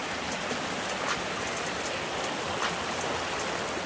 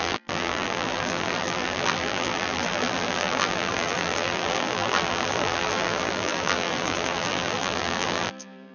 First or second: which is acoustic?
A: first